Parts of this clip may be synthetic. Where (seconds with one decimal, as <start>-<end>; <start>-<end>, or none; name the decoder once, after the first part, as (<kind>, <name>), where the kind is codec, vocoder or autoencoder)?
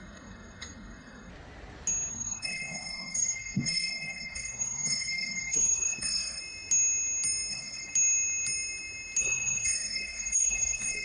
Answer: 0.0-1.3 (codec, SNAC); 2.1-6.4; 7.5-7.9; 9.2-11.0